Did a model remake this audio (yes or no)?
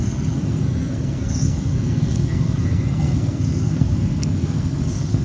yes